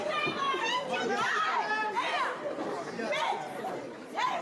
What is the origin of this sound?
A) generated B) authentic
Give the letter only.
A